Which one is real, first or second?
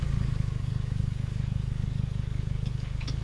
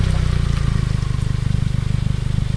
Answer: second